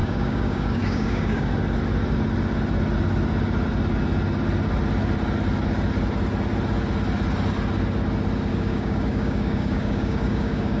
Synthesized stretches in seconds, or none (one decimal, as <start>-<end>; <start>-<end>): 0.0-1.5; 8.5-10.8